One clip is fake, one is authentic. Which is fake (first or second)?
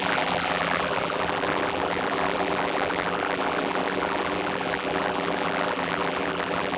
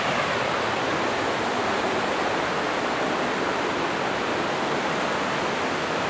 first